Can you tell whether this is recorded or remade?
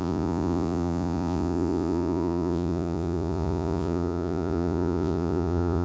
remade